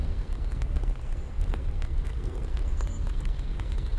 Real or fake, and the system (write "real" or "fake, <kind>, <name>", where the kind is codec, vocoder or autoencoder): fake, codec, SNAC